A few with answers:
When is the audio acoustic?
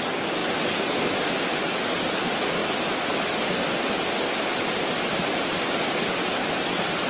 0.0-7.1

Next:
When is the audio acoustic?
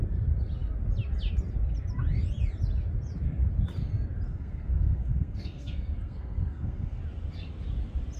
0.0-4.3; 7.0-8.2